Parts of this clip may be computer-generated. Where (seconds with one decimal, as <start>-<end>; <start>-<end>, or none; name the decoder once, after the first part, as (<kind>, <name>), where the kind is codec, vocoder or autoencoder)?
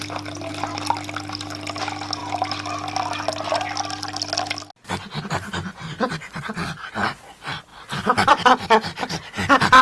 2.2-3.5 (vocoder, BigVGAN v2); 7.7-8.3